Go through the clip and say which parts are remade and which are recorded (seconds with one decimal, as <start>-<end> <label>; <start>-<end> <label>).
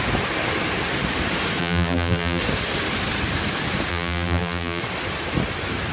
0.0-1.6 recorded; 1.6-2.4 remade; 2.4-3.9 recorded; 3.9-4.8 remade; 4.8-5.9 recorded